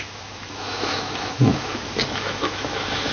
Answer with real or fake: fake